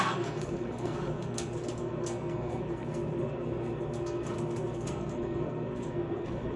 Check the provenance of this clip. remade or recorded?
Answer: remade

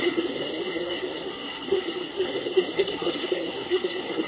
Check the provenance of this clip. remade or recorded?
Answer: remade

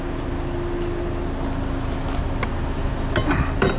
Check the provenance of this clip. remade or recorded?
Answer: recorded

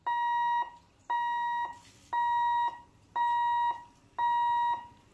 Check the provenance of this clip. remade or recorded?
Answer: recorded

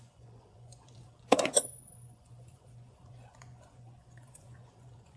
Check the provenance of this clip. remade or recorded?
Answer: remade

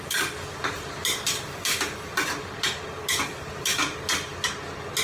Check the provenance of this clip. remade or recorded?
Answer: recorded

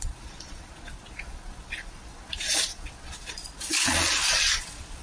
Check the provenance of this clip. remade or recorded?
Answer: remade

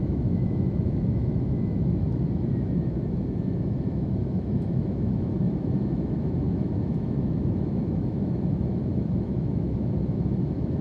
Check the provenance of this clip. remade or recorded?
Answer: remade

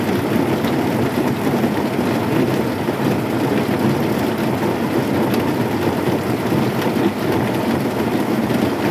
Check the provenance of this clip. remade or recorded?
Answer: recorded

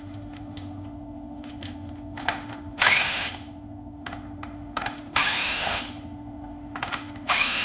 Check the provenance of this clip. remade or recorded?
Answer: remade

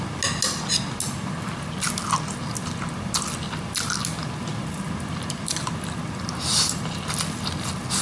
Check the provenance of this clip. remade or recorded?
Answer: recorded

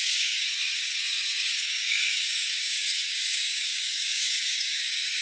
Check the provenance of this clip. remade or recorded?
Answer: remade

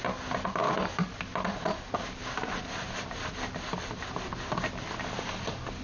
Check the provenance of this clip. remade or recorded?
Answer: recorded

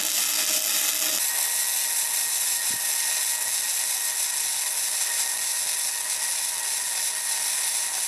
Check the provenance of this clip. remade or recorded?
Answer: recorded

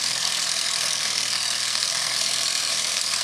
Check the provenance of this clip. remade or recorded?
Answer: remade